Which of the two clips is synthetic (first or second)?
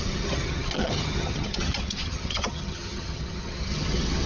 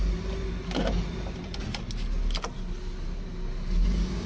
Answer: first